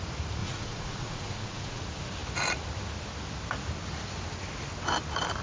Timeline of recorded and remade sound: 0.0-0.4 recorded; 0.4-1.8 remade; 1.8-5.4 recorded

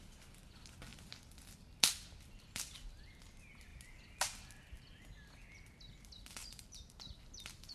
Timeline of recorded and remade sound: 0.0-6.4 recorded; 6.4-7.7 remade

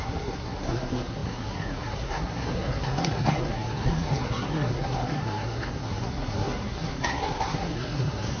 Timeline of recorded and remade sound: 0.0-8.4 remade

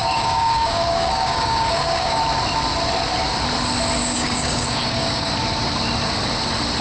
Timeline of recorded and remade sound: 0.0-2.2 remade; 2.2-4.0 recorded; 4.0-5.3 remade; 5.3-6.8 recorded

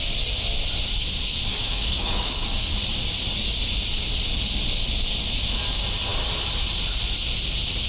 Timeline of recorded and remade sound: 0.0-1.5 recorded; 1.5-2.7 remade; 2.7-7.9 recorded